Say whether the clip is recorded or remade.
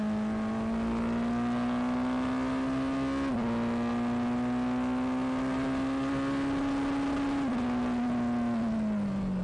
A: recorded